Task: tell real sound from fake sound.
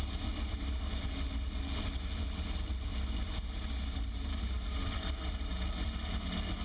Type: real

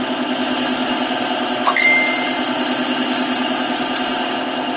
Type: real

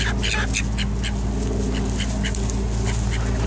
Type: real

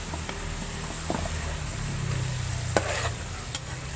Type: real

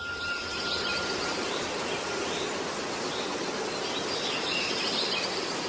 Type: real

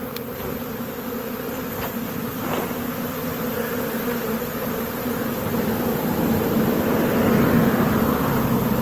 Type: real